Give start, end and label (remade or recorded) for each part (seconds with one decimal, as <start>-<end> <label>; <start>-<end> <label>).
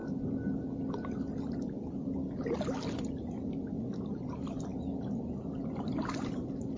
0.0-6.8 recorded